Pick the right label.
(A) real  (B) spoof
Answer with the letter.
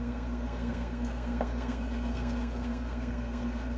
B